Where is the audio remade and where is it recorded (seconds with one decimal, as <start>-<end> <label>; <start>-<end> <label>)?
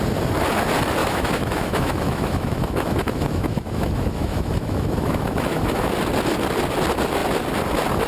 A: 0.0-1.0 recorded; 1.0-5.9 remade; 5.9-8.1 recorded